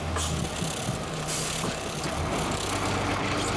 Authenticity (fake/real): real